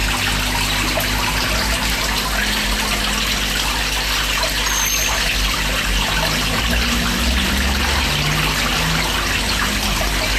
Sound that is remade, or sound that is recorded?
recorded